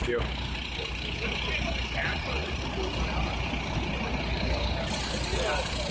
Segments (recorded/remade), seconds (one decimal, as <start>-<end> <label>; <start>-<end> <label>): 0.0-2.1 recorded; 2.1-2.6 remade; 2.6-5.9 recorded